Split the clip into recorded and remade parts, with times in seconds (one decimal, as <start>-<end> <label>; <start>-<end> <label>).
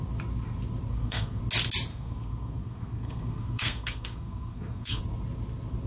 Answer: 0.0-0.9 recorded; 0.9-1.4 remade; 1.4-1.9 recorded; 1.9-5.0 remade; 5.0-5.9 recorded